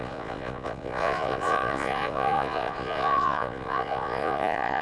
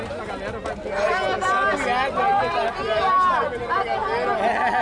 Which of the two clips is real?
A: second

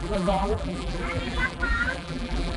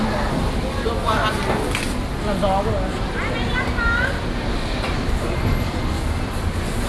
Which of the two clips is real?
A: second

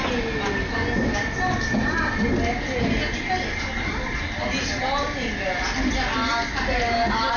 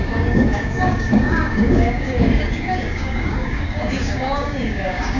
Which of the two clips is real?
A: first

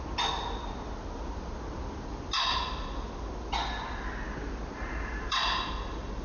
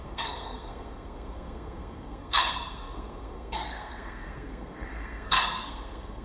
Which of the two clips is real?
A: first